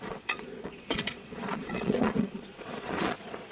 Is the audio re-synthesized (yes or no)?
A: yes